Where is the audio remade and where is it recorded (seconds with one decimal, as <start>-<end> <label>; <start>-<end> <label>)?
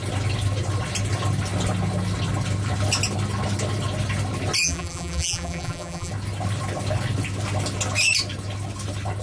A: 0.0-4.6 recorded; 4.6-6.1 remade; 6.1-9.2 recorded